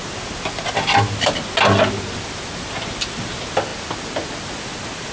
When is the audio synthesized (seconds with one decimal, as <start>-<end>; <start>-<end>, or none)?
none